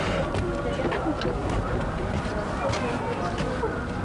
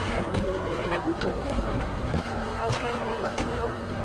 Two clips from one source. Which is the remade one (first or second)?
second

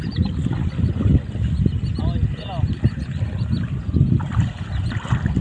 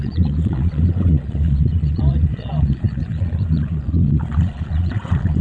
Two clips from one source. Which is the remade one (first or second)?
second